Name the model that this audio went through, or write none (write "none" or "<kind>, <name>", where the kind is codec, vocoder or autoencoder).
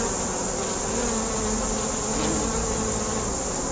none